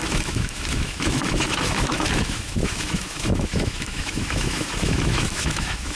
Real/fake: fake